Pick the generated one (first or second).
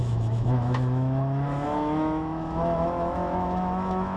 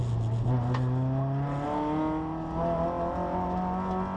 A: first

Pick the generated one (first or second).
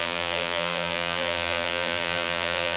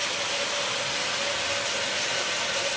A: first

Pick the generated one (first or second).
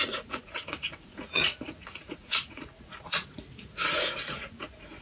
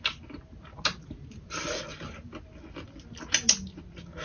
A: first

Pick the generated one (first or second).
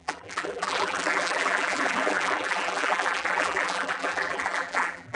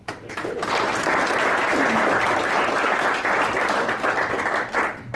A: first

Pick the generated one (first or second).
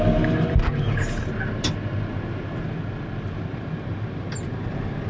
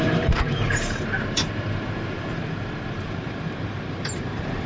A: second